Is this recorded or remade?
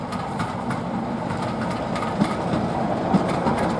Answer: recorded